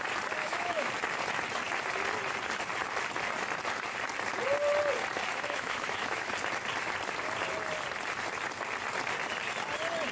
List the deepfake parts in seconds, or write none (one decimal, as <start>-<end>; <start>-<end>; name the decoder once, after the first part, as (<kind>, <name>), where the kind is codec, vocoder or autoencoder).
0.4-0.9 (autoencoder, DAC-VAE); 5.3-6.3